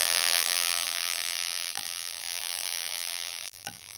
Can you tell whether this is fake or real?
fake